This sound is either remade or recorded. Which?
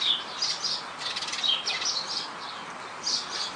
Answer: recorded